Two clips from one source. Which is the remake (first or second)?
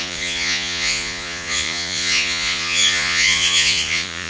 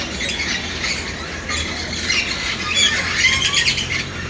first